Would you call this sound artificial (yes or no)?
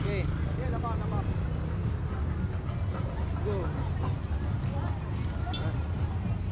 no